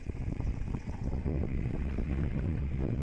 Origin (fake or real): fake